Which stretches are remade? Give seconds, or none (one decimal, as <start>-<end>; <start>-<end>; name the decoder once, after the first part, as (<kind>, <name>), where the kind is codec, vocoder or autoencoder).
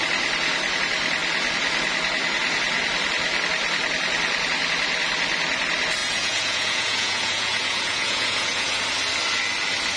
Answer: 6.0-8.8 (vocoder, Vocos)